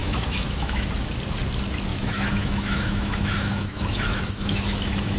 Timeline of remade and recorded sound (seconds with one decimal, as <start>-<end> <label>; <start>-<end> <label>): 0.0-0.9 remade; 0.9-1.9 recorded; 1.9-5.2 remade